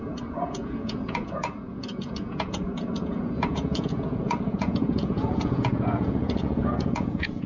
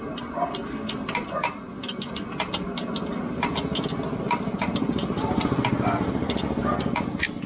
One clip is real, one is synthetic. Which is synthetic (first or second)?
first